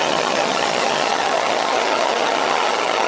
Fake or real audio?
fake